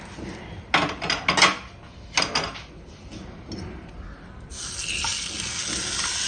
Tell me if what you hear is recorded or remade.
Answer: recorded